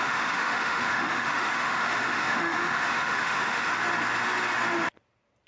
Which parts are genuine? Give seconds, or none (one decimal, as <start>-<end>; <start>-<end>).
3.7-5.5